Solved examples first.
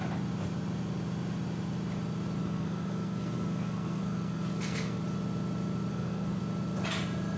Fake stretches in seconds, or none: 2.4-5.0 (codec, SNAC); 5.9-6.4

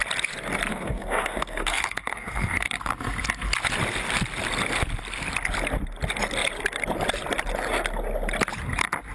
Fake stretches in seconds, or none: 0.7-2.7 (codec, SNAC)

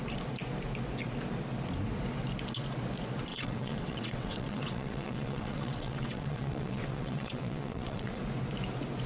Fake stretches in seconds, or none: 3.3-8.2 (vocoder, WaveNeXt)

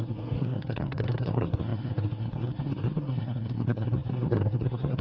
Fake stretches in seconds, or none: 0.0-5.0 (codec, SNAC)

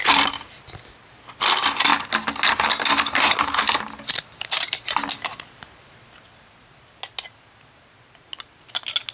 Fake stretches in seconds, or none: none